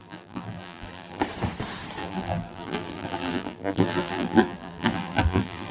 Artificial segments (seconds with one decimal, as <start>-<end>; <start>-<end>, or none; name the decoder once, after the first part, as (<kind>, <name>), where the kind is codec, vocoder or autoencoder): 0.0-1.2 (vocoder, BigVGAN v2); 2.0-5.7